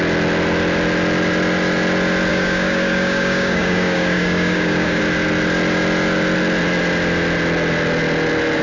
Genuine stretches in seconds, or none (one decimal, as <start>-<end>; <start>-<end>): 0.0-2.3; 5.0-8.6